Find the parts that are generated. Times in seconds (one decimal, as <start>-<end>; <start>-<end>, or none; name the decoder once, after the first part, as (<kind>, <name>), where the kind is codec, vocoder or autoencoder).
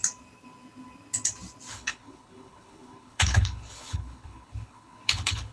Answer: 1.7-5.5 (codec, HILCodec)